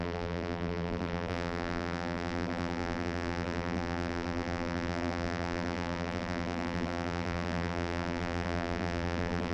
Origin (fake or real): fake